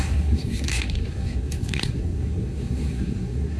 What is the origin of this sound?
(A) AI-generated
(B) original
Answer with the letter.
A